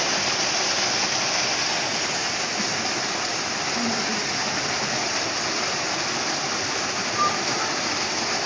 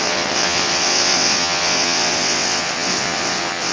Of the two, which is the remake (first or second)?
second